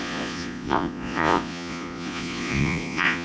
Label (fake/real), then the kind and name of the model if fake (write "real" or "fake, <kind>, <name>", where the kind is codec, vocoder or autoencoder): fake, vocoder, Vocos